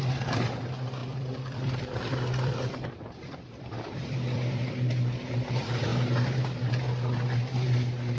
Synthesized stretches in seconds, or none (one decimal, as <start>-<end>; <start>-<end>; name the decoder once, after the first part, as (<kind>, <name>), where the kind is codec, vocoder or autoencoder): 0.0-5.9 (vocoder, BigVGAN v2)